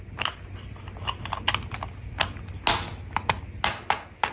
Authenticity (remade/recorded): recorded